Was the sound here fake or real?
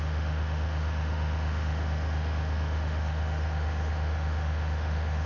fake